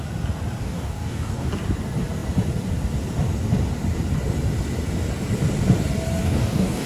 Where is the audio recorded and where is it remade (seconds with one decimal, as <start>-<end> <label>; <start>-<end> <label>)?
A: 0.0-0.6 recorded; 0.6-1.5 remade; 1.5-6.2 recorded; 6.2-6.9 remade